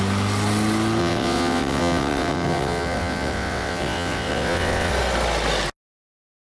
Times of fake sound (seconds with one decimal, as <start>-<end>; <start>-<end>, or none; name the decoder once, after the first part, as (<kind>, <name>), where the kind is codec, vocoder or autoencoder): 1.0-4.9 (vocoder, WaveNeXt)